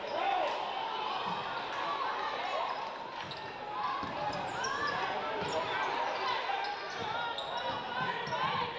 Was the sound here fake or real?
real